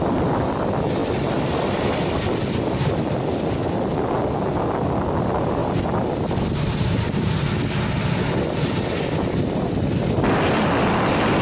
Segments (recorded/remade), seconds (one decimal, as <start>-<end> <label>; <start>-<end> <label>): 0.0-11.4 recorded